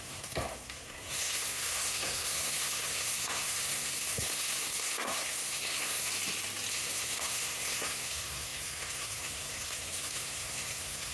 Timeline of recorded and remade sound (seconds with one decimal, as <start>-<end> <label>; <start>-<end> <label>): 0.0-6.1 remade; 6.1-6.7 recorded; 6.7-11.1 remade